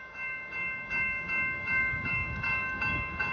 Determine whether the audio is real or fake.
fake